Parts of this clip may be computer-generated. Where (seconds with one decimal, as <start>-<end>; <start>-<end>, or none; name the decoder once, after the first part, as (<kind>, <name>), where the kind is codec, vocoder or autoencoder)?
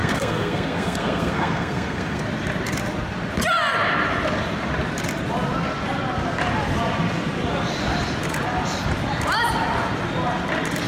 0.0-2.2 (codec, SNAC)